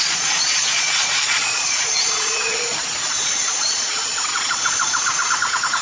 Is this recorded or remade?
remade